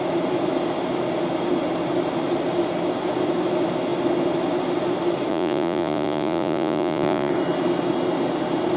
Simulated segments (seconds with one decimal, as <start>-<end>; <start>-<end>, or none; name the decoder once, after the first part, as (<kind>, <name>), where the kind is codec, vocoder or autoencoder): 5.3-7.3 (vocoder, Vocos)